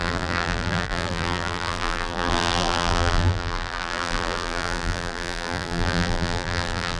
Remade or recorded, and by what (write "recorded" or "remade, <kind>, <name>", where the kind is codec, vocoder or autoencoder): remade, vocoder, BigVGAN v2